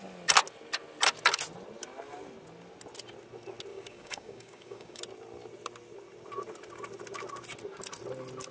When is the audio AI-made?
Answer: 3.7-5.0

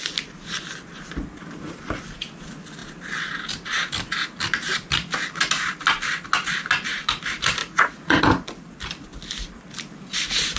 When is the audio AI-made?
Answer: 7.6-8.2

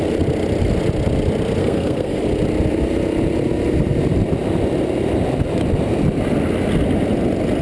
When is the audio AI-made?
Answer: 1.6-2.2